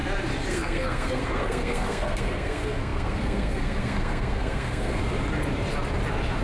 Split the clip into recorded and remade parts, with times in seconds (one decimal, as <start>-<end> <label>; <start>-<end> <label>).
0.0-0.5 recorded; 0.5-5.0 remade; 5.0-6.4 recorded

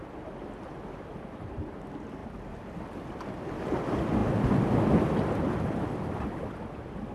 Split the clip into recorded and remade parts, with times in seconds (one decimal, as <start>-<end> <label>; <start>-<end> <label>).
0.0-7.1 recorded

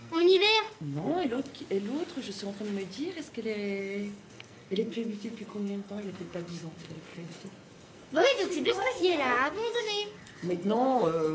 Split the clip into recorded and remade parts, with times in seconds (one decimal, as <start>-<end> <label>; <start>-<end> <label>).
0.0-1.5 remade; 1.5-3.8 recorded; 3.8-11.3 remade

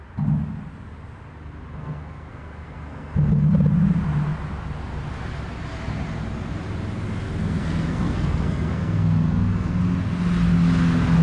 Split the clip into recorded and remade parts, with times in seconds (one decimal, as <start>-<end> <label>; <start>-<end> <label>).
0.0-1.7 recorded; 1.7-3.5 remade; 3.5-7.4 recorded; 7.4-9.8 remade; 9.8-11.2 recorded

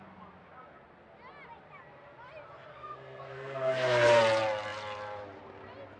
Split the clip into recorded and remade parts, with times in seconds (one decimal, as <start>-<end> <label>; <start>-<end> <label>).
0.0-2.7 recorded; 2.7-4.2 remade; 4.2-6.0 recorded

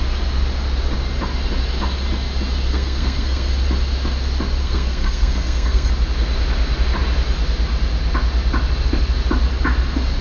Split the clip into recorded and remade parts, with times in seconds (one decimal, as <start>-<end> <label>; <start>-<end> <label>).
0.0-2.7 recorded; 2.7-3.5 remade; 3.5-4.6 recorded; 4.6-5.9 remade; 5.9-10.2 recorded